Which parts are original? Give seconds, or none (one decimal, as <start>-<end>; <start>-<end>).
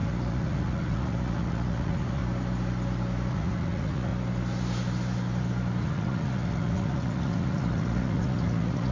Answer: 2.2-3.3; 4.1-5.8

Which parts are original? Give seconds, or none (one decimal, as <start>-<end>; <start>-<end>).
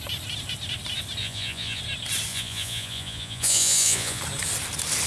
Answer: 0.0-1.2; 1.8-2.3; 4.2-5.1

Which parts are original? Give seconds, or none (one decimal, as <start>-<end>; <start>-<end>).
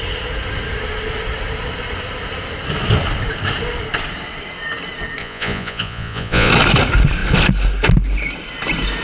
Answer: 0.0-5.2; 6.5-9.0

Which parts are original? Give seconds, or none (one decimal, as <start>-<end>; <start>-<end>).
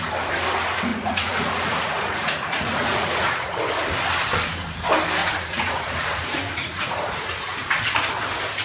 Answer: 0.0-0.9; 3.6-5.2; 7.7-8.6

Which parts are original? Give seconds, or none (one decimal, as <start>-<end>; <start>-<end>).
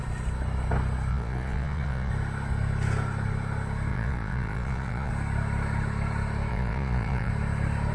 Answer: 0.0-1.1; 2.1-3.9; 5.1-6.5; 7.3-7.9